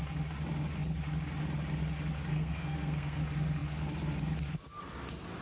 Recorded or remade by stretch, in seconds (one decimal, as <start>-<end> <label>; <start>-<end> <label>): 0.0-2.3 recorded; 2.3-3.2 remade; 3.2-5.4 recorded